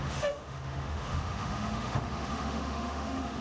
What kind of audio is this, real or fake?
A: fake